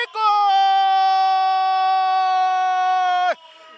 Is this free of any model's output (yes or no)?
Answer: yes